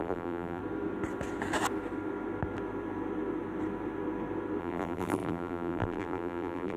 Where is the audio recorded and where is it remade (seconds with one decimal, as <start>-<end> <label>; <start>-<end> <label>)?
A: 0.0-0.6 remade; 0.6-4.6 recorded; 4.6-6.8 remade